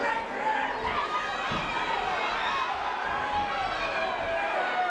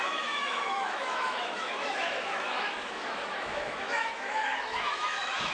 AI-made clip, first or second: second